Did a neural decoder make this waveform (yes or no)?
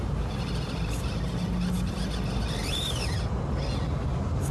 no